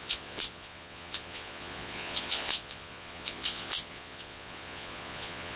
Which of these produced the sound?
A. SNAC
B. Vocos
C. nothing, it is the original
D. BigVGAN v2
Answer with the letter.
B